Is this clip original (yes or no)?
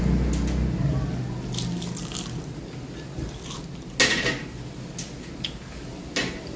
yes